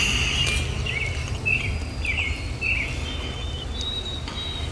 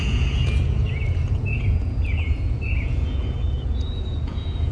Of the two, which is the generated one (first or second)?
second